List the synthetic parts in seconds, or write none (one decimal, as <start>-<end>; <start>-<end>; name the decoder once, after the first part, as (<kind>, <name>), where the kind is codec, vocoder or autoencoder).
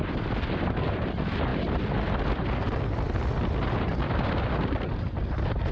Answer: none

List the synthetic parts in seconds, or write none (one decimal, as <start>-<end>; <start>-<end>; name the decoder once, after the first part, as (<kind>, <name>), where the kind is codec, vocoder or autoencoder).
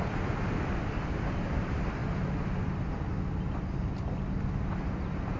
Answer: none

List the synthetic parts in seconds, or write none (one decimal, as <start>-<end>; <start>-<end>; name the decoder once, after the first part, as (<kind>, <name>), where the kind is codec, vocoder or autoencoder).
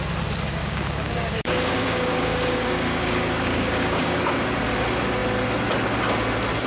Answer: 0.6-4.2 (codec, DAC)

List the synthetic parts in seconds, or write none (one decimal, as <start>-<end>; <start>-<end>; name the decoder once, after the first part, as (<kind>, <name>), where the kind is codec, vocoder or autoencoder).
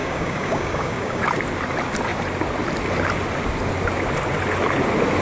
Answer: 0.0-1.2 (codec, DAC)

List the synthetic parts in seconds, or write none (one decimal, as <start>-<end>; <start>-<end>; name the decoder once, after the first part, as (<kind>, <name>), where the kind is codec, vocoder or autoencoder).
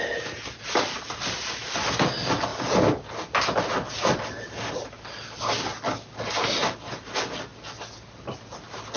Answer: none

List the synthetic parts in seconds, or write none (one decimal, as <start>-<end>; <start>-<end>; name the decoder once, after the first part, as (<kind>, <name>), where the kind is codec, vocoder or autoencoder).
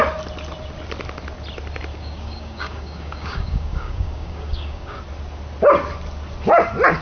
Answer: 1.9-5.0 (codec, DAC)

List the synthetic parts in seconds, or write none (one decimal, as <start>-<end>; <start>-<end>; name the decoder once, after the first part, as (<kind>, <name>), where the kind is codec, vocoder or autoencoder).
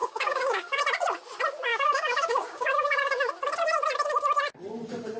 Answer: 0.0-0.8 (codec, DAC); 1.7-3.3